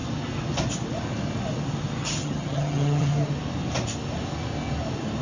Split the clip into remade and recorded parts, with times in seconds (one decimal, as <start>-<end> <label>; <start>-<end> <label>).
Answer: 0.0-2.0 recorded; 2.0-3.1 remade; 3.1-5.2 recorded